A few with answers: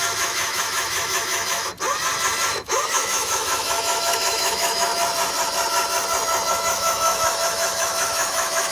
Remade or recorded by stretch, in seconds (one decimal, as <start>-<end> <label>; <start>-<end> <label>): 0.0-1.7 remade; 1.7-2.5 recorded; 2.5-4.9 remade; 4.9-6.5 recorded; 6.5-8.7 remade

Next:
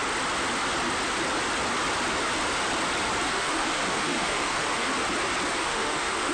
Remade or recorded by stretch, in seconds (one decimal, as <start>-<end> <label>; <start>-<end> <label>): 0.0-3.3 recorded; 3.3-4.9 remade; 4.9-5.6 recorded; 5.6-6.3 remade

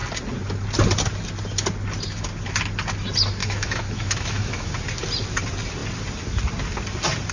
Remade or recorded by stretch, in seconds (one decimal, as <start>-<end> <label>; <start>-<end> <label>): 0.0-3.4 recorded; 3.4-4.7 remade; 4.7-7.3 recorded

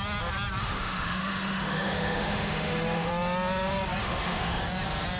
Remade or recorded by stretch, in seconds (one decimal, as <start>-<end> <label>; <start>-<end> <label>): 0.0-0.6 recorded; 0.6-3.1 remade; 3.1-4.0 recorded; 4.0-4.6 remade; 4.6-5.2 recorded

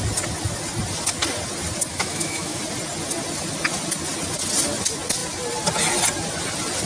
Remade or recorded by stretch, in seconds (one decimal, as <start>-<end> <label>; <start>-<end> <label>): 0.0-1.9 recorded; 1.9-2.6 remade; 2.6-6.9 recorded

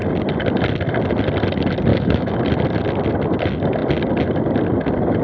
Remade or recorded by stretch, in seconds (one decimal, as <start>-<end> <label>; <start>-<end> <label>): 0.0-1.9 recorded; 1.9-2.4 remade; 2.4-5.2 recorded

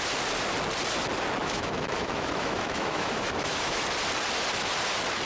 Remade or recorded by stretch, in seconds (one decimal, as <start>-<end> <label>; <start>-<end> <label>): 0.0-1.4 recorded; 1.4-3.8 remade; 3.8-5.3 recorded

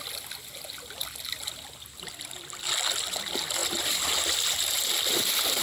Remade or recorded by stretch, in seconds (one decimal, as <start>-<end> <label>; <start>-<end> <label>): 0.0-5.6 recorded